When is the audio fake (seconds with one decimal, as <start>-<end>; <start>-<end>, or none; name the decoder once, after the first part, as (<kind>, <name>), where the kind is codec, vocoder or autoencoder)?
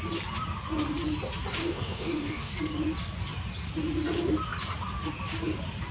1.6-2.5 (autoencoder, DAC-VAE)